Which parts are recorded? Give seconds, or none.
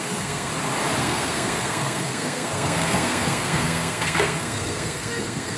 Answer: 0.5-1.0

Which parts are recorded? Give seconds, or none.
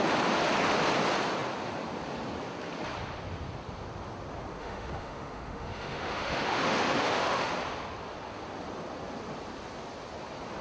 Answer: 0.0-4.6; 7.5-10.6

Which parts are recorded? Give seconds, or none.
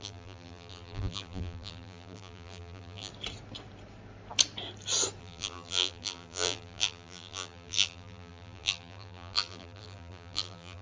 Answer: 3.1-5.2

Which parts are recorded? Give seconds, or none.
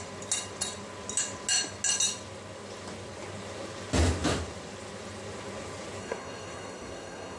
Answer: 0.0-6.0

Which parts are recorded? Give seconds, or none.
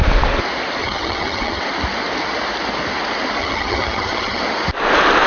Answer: 0.0-0.8; 1.6-3.4; 4.4-5.3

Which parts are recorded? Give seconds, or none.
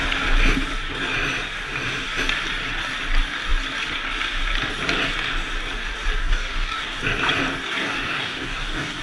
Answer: 0.0-6.2; 7.0-7.6